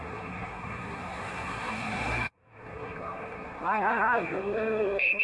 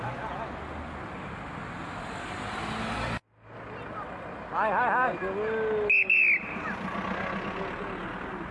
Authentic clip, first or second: second